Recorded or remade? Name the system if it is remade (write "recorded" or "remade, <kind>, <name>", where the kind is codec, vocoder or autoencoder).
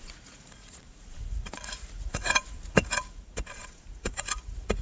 remade, vocoder, Vocos